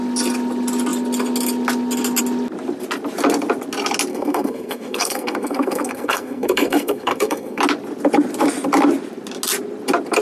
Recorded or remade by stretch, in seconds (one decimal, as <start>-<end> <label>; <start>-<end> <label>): 0.0-4.1 recorded; 4.1-7.6 remade; 7.6-10.2 recorded